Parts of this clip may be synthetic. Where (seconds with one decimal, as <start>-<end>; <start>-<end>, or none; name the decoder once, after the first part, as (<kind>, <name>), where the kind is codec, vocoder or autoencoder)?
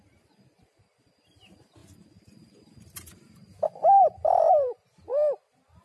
0.0-5.8 (vocoder, BigVGAN v2)